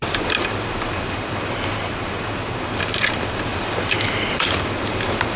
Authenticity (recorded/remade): remade